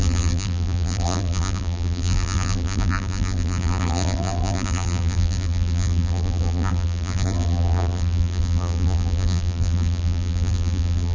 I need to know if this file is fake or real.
fake